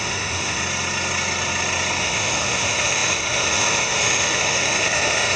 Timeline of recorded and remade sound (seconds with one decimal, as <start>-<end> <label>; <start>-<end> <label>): 0.0-0.6 remade; 0.6-2.0 recorded; 2.0-5.4 remade